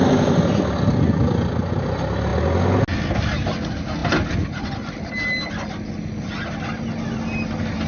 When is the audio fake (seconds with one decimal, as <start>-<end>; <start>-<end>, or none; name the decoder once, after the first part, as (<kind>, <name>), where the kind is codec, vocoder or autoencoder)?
none